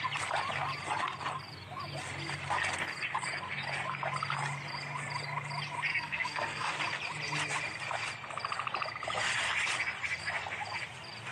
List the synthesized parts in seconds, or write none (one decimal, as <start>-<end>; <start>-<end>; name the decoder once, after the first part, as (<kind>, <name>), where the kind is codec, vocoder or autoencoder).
5.9-6.7 (codec, SNAC)